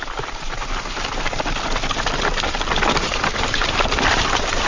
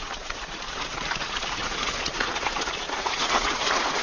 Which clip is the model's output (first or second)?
second